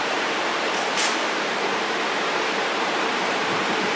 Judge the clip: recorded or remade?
remade